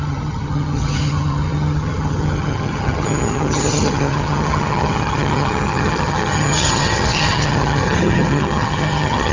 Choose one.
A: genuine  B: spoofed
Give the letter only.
B